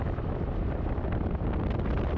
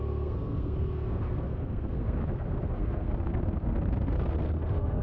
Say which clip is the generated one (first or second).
second